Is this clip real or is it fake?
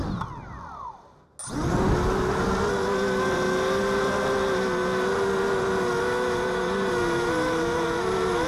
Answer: real